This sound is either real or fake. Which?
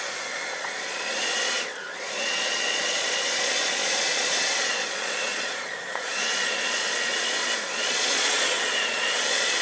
fake